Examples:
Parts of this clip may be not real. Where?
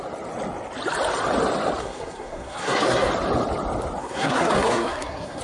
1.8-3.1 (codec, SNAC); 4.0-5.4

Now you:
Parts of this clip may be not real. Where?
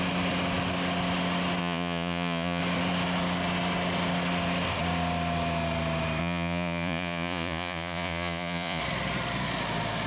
1.6-2.6 (vocoder, Vocos); 6.2-8.8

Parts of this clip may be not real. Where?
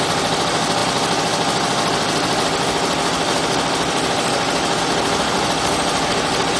none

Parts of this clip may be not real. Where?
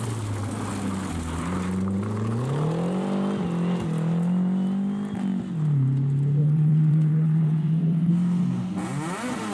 6.4-8.1 (vocoder, WaveNeXt)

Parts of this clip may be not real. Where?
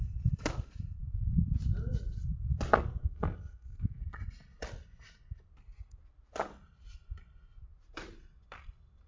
3.0-4.0 (codec, SNAC)